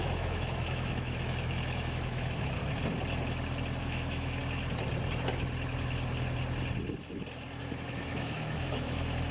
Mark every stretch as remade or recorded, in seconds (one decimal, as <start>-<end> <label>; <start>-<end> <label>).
0.0-2.6 remade; 2.6-3.8 recorded; 3.8-4.4 remade; 4.4-7.6 recorded; 7.6-9.3 remade